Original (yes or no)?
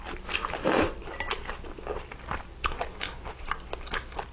yes